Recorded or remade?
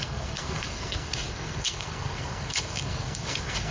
remade